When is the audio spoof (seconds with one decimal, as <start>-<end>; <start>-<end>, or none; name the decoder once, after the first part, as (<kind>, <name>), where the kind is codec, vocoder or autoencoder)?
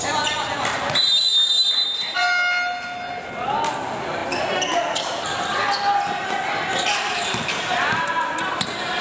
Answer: none